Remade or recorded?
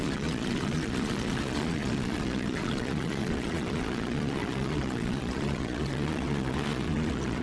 remade